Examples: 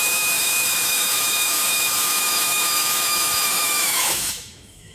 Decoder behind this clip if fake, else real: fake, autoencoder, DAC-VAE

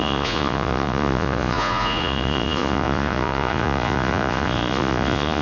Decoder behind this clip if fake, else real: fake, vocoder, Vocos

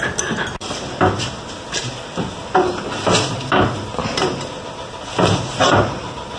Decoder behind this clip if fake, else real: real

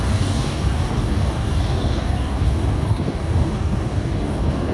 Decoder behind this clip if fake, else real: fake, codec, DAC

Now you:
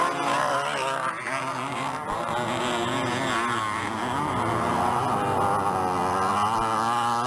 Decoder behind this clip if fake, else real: real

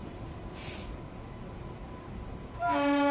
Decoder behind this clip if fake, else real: real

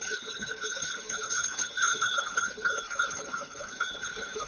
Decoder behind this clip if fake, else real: fake, codec, HILCodec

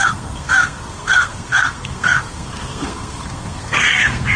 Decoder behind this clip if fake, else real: fake, codec, SNAC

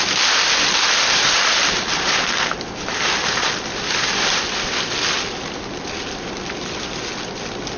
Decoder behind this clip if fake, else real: real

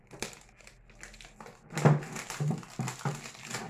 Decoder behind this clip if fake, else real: real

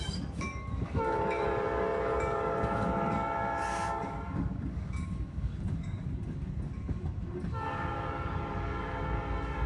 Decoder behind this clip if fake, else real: fake, codec, DAC